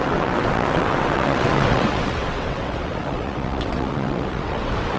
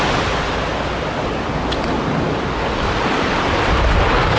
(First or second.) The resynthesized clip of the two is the first